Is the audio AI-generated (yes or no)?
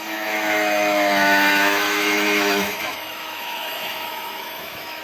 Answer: yes